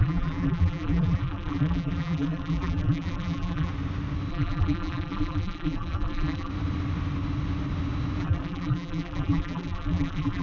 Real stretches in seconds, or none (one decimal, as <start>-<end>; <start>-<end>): 3.7-4.3; 6.5-8.2